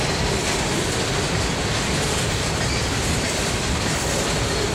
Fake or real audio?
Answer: fake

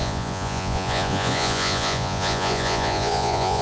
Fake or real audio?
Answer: fake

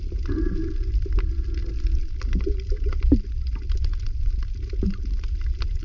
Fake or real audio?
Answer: real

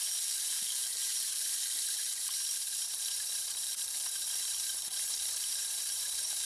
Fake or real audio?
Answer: fake